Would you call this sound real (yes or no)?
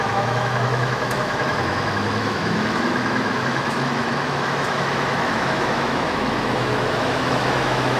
no